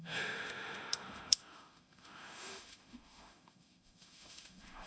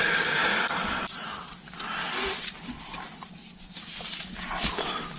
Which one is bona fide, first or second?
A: second